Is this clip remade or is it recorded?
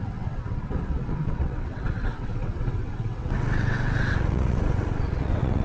remade